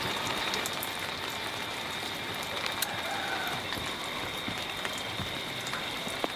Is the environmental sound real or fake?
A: real